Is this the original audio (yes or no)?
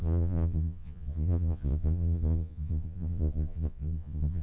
no